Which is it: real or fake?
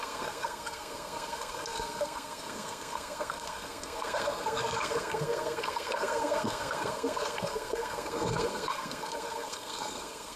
fake